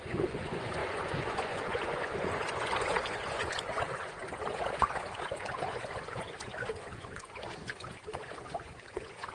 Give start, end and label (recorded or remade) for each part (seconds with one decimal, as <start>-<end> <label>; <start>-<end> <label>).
0.0-9.3 remade